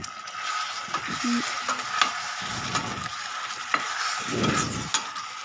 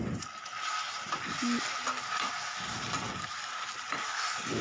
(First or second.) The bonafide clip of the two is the first